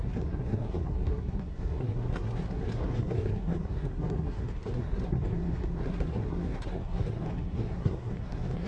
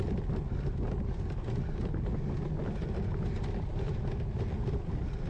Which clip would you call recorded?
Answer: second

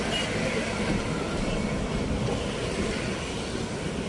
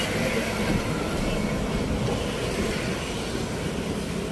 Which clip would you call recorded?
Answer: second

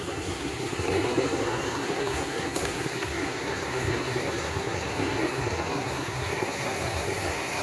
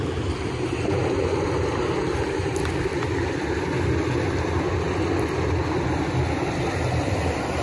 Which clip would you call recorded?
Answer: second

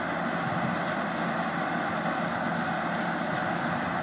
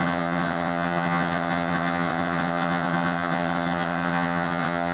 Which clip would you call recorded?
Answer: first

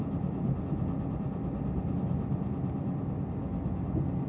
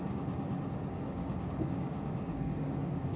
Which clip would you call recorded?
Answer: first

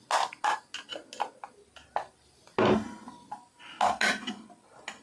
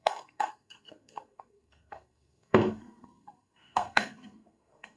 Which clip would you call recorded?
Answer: first